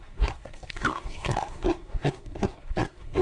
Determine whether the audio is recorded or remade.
remade